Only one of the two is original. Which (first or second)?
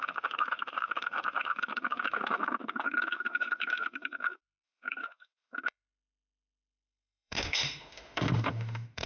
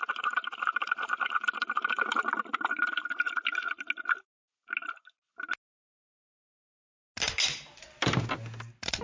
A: second